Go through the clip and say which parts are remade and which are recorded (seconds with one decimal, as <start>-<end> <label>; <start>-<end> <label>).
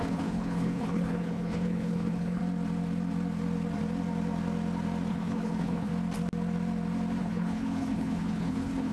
0.0-2.4 remade; 2.4-5.1 recorded; 5.1-5.9 remade; 5.9-7.2 recorded; 7.2-8.9 remade